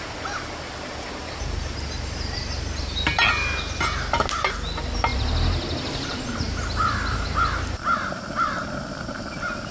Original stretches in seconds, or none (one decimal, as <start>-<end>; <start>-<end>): 0.0-9.7